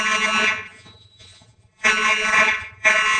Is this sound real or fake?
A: fake